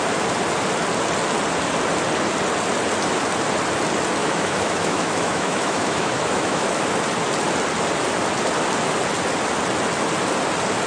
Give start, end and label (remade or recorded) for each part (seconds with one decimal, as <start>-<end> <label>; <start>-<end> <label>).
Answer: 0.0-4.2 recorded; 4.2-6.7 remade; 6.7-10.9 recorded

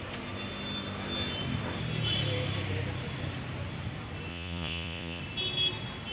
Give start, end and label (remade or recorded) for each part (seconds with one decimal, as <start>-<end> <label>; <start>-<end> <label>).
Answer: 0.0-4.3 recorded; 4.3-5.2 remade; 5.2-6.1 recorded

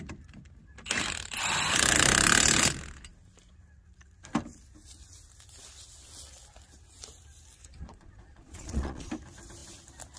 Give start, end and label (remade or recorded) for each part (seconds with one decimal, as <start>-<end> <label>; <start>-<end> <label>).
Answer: 0.0-7.6 recorded; 7.6-9.1 remade; 9.1-10.2 recorded